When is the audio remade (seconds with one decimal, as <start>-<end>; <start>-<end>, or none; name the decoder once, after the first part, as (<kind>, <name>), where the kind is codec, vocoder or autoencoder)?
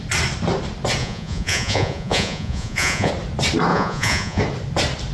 1.0-3.1 (vocoder, Vocos); 3.7-4.4